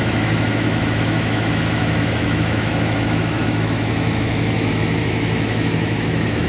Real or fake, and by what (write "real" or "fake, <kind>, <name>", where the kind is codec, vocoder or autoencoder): fake, autoencoder, DAC-VAE